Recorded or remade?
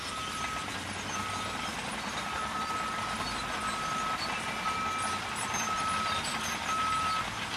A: recorded